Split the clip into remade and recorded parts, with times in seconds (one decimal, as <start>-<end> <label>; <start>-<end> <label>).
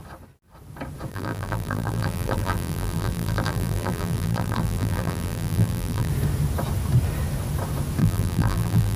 0.0-1.1 recorded; 1.1-6.1 remade; 6.1-8.0 recorded; 8.0-9.0 remade